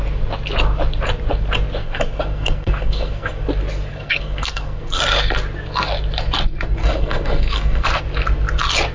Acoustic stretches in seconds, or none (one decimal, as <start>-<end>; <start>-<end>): 0.0-1.8; 3.4-3.9; 5.0-6.8; 8.0-8.9